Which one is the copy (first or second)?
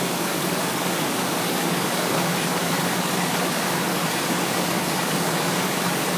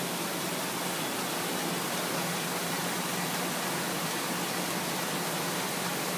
first